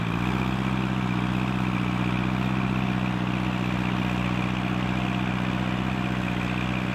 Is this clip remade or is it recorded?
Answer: recorded